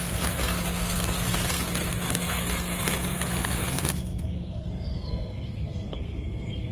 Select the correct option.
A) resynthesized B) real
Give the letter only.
A